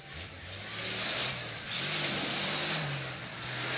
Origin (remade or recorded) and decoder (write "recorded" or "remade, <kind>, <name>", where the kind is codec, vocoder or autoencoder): recorded